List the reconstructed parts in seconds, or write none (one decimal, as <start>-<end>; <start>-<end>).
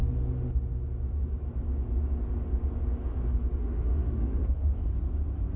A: 3.6-4.9